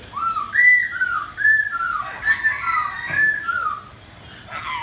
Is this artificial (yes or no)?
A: no